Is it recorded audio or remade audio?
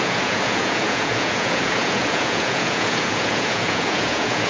remade